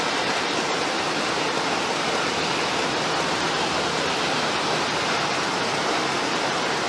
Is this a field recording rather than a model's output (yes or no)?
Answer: yes